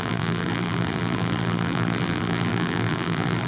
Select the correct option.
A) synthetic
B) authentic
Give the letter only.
A